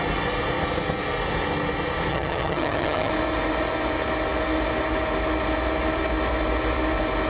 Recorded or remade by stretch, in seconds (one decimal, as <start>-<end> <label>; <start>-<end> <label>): 0.0-2.1 recorded; 2.1-3.1 remade; 3.1-7.3 recorded